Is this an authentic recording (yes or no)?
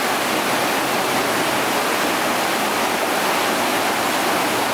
yes